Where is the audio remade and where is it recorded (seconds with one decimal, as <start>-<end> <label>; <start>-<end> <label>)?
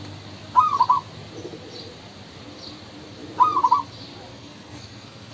0.0-4.3 recorded; 4.3-5.3 remade